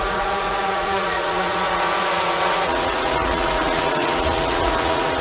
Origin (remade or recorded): remade